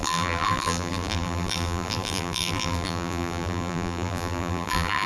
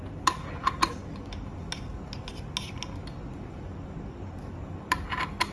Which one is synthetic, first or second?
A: first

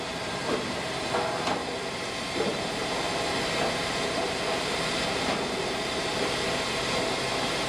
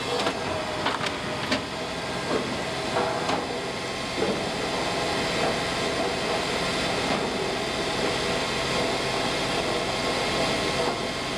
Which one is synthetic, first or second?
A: first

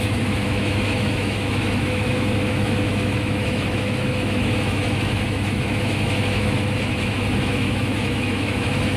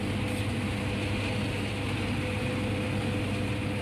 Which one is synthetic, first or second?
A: first